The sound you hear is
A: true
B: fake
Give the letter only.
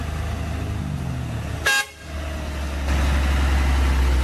A